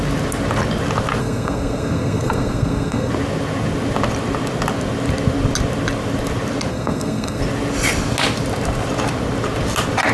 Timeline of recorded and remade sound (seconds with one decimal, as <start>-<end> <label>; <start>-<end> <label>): 0.0-1.2 recorded; 1.2-3.1 remade; 3.1-6.7 recorded; 6.7-7.4 remade; 7.4-10.1 recorded